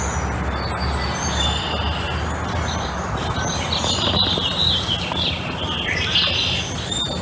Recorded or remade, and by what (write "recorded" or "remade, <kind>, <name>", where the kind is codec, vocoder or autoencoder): recorded